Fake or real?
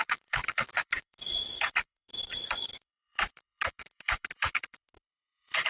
fake